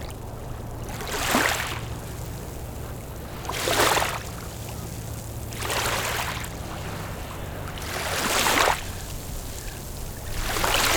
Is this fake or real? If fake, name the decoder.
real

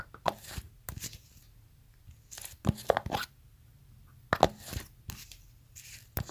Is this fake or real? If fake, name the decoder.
real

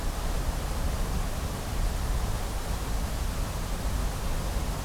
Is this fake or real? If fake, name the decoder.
real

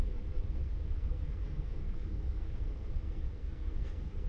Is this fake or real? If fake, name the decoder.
fake, codec, SNAC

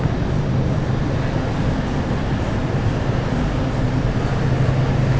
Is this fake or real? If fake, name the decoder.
real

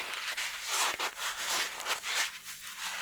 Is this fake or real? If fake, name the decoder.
real